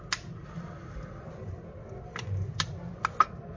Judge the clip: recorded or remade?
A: recorded